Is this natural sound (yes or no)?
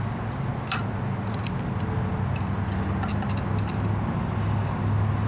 yes